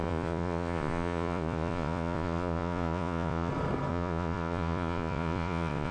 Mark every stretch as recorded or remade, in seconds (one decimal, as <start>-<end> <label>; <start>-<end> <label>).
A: 0.0-3.5 remade; 3.5-3.9 recorded; 3.9-5.9 remade